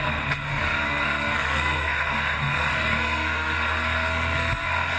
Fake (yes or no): yes